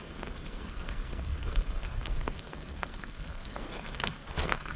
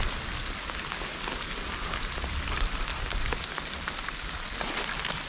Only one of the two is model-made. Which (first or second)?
first